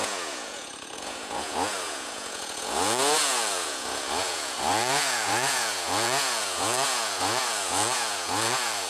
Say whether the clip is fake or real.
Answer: fake